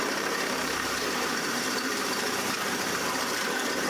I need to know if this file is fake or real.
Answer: fake